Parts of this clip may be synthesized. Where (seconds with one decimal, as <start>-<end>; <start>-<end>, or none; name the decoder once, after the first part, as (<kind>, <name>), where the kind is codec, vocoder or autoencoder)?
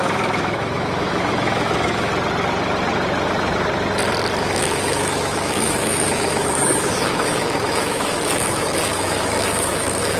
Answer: 0.0-2.1 (autoencoder, DAC-VAE); 4.4-10.2